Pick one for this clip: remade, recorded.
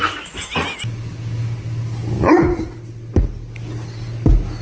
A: recorded